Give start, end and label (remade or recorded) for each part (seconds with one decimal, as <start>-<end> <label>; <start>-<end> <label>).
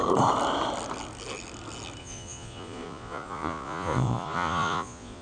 0.0-2.0 recorded; 2.0-5.2 remade